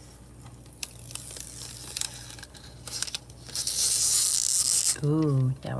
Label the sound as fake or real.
real